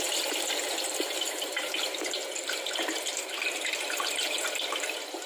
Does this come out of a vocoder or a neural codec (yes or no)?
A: yes